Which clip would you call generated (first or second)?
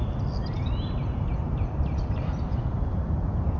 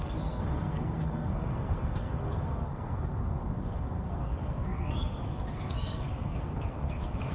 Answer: second